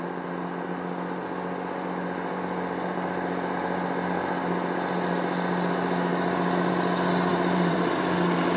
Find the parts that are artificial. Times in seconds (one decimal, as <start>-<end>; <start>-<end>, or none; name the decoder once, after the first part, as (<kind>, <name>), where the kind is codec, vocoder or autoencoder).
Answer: 7.3-7.9 (vocoder, BigVGAN v2)